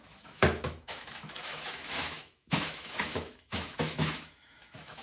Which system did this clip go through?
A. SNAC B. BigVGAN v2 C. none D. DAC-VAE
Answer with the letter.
D